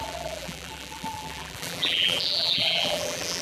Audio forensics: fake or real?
fake